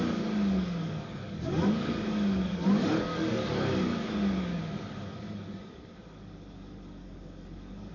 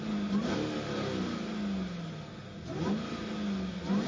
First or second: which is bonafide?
second